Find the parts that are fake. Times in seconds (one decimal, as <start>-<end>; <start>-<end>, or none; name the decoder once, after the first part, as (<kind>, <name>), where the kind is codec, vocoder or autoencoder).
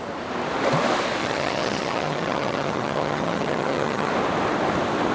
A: 1.2-4.1 (vocoder, HiFi-GAN)